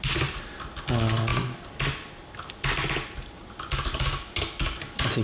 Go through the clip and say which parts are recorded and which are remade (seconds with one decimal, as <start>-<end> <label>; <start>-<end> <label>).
0.0-5.2 recorded